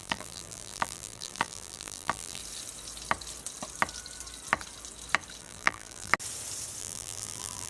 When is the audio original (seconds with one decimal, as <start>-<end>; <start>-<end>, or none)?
2.4-5.4; 6.1-6.8